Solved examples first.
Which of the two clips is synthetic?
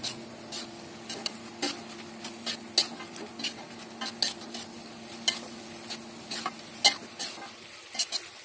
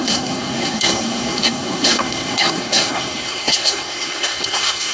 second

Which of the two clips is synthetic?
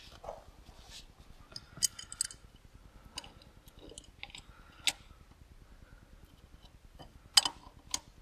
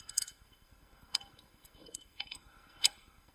second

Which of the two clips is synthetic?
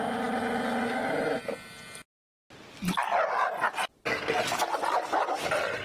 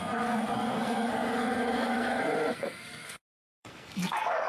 second